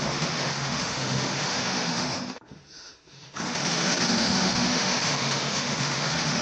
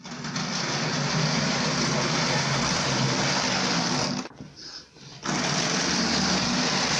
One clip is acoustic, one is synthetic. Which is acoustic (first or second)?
second